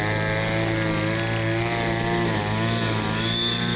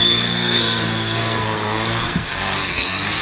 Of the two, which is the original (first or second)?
first